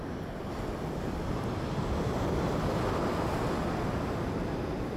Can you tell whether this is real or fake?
real